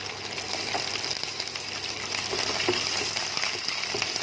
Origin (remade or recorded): recorded